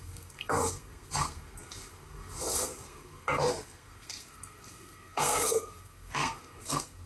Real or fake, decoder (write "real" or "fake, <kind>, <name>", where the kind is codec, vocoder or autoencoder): fake, codec, SNAC